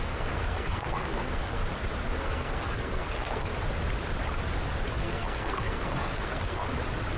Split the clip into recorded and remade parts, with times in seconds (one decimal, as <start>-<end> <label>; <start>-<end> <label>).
0.0-1.6 remade; 1.6-2.2 recorded; 2.2-3.5 remade; 3.5-5.0 recorded; 5.0-6.7 remade; 6.7-7.2 recorded